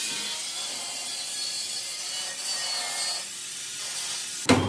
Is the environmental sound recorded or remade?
recorded